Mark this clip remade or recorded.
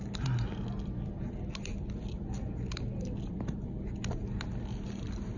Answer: recorded